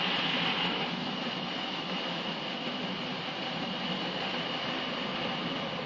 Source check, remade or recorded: recorded